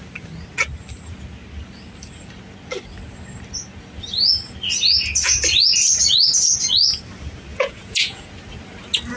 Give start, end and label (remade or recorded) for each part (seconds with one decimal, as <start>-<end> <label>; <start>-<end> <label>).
0.0-7.5 recorded; 7.5-8.3 remade; 8.3-9.2 recorded